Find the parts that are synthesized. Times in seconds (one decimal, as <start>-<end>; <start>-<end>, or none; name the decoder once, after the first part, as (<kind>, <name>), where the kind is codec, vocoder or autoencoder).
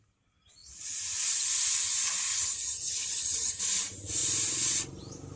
2.3-3.6 (vocoder, HiFi-GAN)